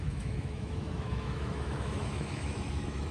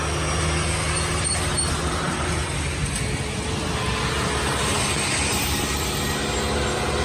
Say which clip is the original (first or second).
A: second